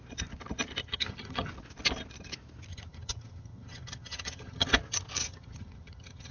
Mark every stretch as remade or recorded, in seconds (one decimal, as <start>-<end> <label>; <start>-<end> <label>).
0.0-0.8 recorded; 0.8-1.5 remade; 1.5-2.7 recorded; 2.7-4.7 remade; 4.7-5.2 recorded; 5.2-6.3 remade